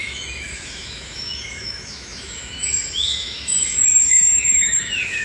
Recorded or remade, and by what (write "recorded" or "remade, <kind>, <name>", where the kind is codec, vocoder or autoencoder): remade, autoencoder, DAC-VAE